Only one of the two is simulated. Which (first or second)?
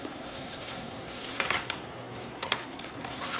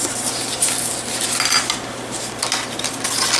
first